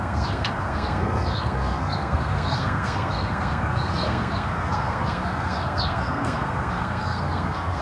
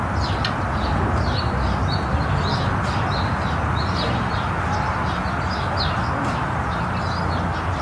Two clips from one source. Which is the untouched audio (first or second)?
second